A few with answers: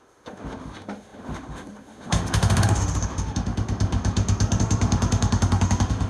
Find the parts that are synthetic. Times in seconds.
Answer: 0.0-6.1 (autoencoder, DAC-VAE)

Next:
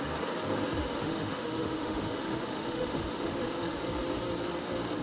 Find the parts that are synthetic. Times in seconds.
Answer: 0.8-3.8 (autoencoder, DAC-VAE)

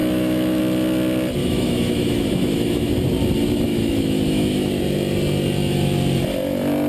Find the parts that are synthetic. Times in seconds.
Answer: 0.0-0.6 (autoencoder, DAC-VAE); 1.4-2.9; 3.7-4.8

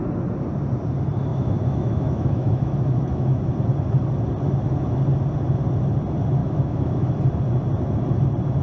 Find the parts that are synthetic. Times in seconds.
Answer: 1.3-3.4 (autoencoder, DAC-VAE); 6.4-7.1

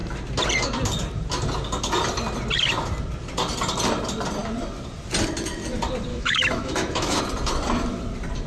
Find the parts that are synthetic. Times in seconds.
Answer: 6.1-7.2 (autoencoder, DAC-VAE)

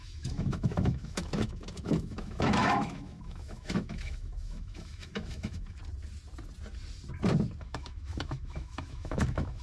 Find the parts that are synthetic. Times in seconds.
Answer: 0.0-5.8 (autoencoder, DAC-VAE); 7.6-9.6

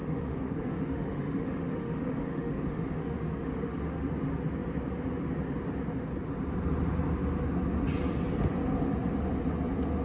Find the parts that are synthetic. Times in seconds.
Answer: 0.0-4.1 (autoencoder, DAC-VAE)